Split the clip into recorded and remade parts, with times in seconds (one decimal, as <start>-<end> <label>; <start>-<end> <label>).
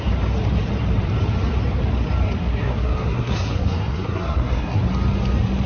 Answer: 0.0-2.4 recorded; 2.4-4.8 remade; 4.8-5.7 recorded